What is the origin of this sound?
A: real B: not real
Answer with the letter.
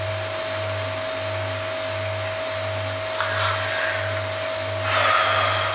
A